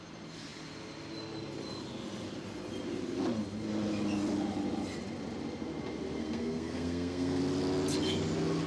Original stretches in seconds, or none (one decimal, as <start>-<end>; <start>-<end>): 0.0-6.2; 7.4-8.7

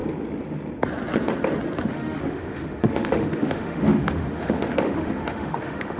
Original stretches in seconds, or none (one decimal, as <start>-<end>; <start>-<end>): 0.0-1.9

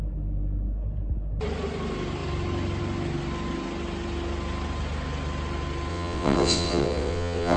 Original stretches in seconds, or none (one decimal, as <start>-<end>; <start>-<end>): 0.0-5.9

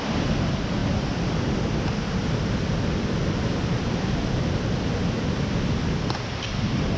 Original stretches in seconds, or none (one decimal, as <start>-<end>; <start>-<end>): 0.0-7.0

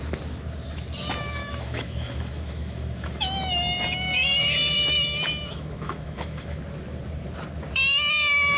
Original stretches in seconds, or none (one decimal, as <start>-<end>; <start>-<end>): 0.0-1.4; 6.6-8.6

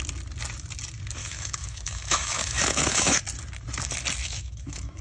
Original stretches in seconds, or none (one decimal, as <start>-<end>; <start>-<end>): 0.0-1.2; 3.2-4.2

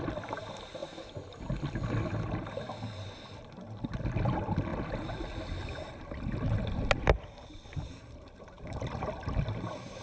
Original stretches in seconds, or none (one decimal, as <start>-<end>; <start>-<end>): 0.0-10.0

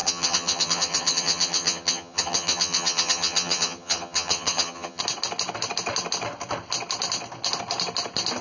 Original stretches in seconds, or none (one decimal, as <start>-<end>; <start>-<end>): 5.0-8.4